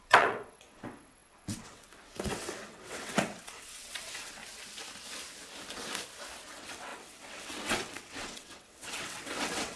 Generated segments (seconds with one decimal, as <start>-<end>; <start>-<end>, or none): 0.0-4.4; 6.5-9.8